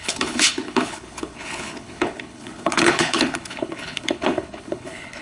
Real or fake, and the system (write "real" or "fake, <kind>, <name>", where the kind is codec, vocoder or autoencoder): fake, codec, HILCodec